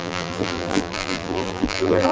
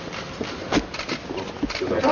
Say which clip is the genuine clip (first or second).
second